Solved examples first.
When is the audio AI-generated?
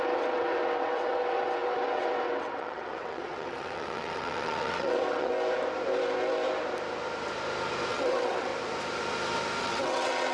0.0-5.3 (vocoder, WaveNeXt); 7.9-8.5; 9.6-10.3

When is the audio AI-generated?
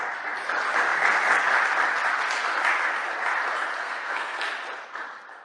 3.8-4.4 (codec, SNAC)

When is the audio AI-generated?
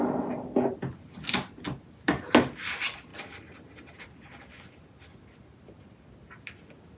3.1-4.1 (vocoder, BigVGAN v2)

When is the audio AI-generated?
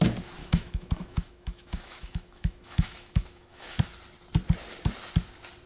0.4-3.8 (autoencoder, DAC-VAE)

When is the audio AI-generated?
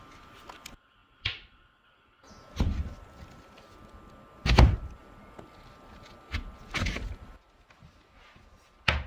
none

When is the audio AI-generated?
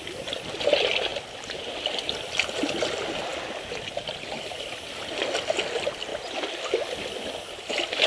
none